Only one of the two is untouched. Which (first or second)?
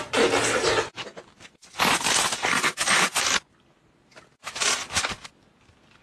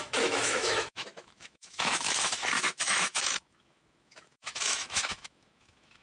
first